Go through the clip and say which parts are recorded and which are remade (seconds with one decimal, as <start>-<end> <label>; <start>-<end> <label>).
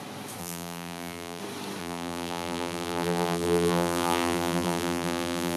0.0-0.4 recorded; 0.4-1.4 remade; 1.4-1.8 recorded; 1.8-5.6 remade